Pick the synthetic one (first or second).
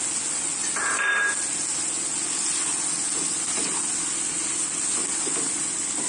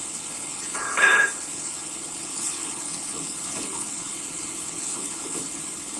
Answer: second